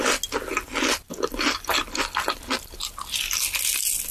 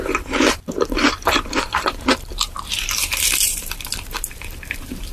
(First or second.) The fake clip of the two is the second